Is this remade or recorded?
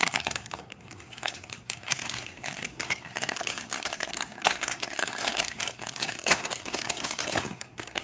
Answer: remade